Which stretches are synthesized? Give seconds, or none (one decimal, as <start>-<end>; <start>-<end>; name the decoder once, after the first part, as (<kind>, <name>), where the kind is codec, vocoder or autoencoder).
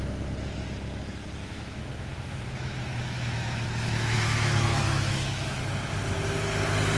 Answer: 1.4-5.6 (autoencoder, DAC-VAE)